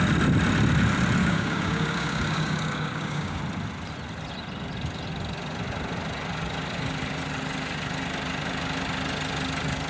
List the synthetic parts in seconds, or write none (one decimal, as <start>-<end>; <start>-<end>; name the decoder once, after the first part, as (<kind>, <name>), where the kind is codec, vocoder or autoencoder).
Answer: 1.2-3.4 (codec, DAC)